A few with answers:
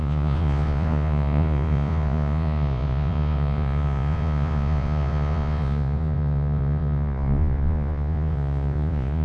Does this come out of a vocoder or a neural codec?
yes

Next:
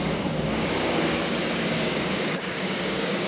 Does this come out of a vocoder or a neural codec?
yes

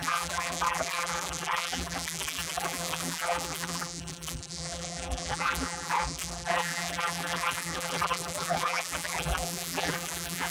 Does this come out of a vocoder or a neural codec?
yes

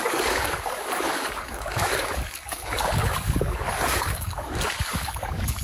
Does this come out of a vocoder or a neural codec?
yes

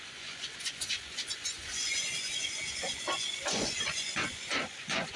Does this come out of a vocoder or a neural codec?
yes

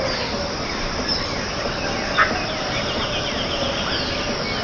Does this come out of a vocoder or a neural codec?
no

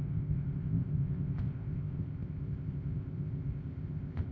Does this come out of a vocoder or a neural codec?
yes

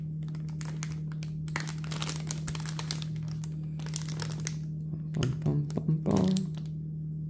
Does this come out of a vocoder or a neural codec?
no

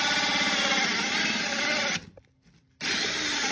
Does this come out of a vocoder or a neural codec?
no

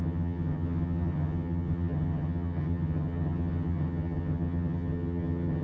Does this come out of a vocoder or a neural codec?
yes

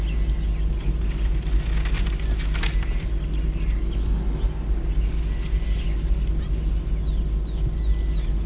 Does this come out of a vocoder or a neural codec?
no